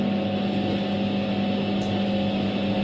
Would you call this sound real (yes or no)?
yes